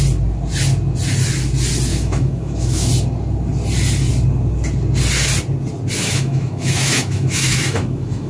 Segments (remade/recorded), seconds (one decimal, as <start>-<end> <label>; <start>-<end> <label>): 0.0-1.9 recorded; 1.9-2.9 remade; 2.9-6.0 recorded; 6.0-8.3 remade